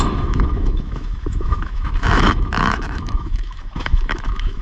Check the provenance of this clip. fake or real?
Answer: fake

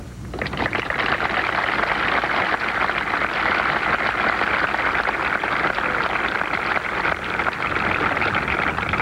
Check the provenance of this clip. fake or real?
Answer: real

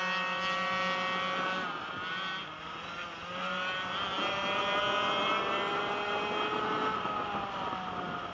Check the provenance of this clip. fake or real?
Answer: real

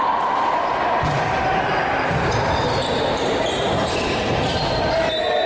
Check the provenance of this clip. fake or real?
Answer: real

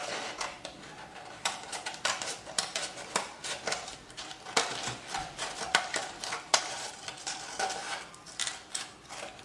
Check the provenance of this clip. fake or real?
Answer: real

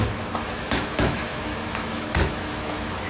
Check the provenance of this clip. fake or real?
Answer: fake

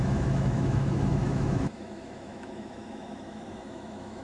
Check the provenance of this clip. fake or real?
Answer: fake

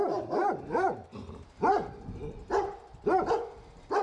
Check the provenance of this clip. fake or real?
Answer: real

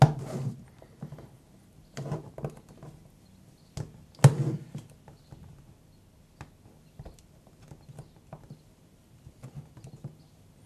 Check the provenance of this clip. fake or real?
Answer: real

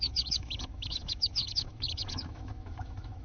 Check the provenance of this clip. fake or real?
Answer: fake